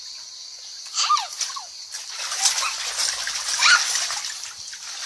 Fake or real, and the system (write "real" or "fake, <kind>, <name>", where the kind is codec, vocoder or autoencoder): real